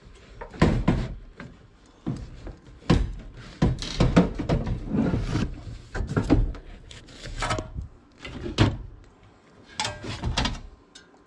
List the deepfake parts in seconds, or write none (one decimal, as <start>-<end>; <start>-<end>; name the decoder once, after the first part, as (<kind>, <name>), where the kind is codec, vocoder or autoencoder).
6.5-7.0 (codec, HILCodec)